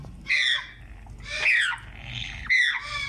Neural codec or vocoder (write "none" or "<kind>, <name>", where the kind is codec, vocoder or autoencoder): none